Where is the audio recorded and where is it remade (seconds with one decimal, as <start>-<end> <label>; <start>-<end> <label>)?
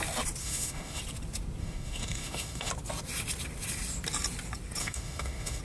0.0-0.4 recorded; 0.4-1.0 remade; 1.0-1.6 recorded; 1.6-2.7 remade; 2.7-4.8 recorded; 4.8-5.6 remade